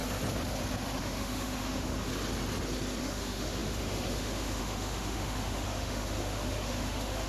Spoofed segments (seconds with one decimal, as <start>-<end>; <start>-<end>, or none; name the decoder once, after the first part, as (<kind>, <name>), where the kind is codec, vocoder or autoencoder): 1.0-2.1 (autoencoder, DAC-VAE); 3.0-7.3